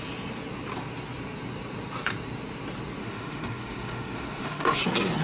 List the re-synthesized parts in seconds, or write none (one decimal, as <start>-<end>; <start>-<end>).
3.0-4.8